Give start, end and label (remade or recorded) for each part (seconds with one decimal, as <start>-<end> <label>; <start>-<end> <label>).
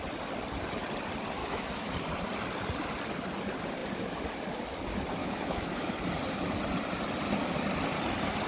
0.0-1.4 recorded; 1.4-1.9 remade; 1.9-5.2 recorded; 5.2-5.9 remade; 5.9-8.5 recorded